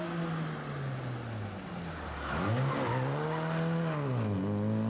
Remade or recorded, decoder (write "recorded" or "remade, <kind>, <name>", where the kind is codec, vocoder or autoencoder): recorded